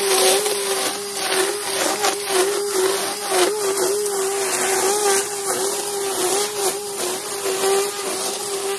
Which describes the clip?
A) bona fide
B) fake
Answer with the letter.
A